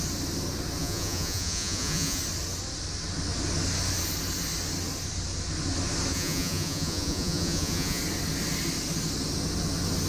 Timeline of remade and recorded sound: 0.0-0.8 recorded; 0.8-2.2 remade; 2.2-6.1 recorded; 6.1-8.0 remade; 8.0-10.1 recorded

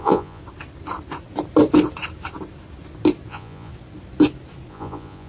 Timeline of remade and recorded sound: 0.0-0.4 remade; 0.4-3.3 recorded; 3.3-3.7 remade; 3.7-4.7 recorded; 4.7-5.3 remade

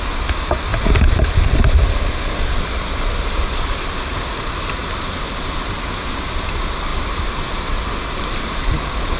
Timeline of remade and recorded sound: 0.0-9.2 recorded

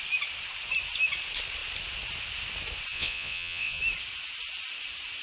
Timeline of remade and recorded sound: 0.0-2.9 recorded; 2.9-3.8 remade; 3.8-5.2 recorded

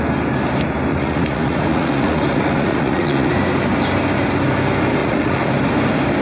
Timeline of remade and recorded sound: 0.0-0.9 recorded; 0.9-3.3 remade; 3.3-5.0 recorded; 5.0-5.5 remade; 5.5-6.2 recorded

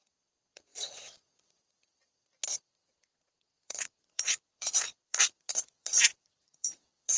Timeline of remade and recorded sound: 0.0-2.1 remade; 2.1-2.7 recorded; 2.7-7.2 remade

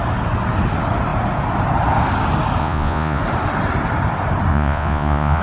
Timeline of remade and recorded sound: 0.0-2.6 recorded; 2.6-3.2 remade; 3.2-4.5 recorded; 4.5-5.4 remade

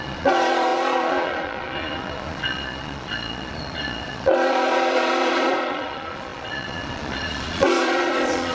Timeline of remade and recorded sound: 0.0-8.5 remade